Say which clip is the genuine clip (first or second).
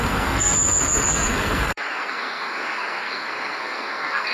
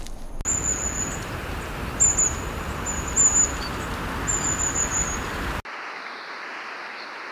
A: second